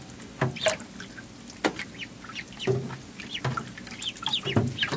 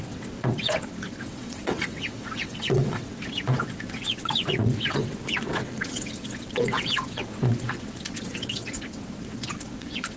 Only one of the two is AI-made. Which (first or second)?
second